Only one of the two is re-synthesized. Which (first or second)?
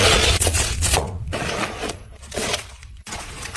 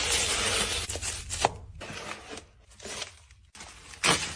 first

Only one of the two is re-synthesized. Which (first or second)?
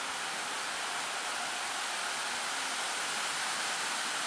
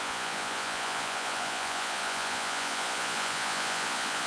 second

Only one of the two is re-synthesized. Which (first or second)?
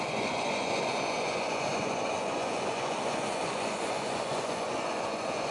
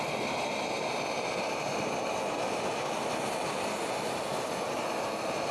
first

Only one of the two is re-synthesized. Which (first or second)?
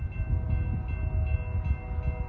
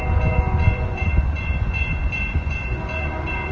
second